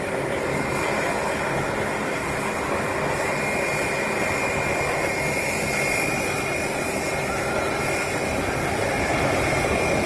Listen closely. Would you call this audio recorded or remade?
recorded